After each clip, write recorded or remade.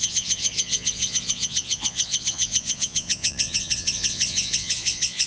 remade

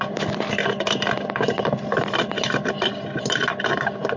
recorded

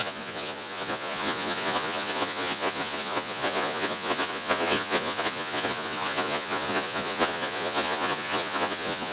remade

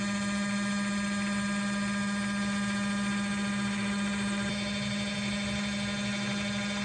recorded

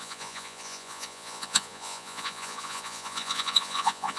remade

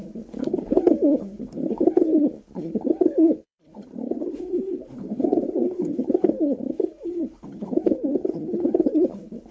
remade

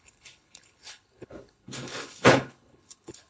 remade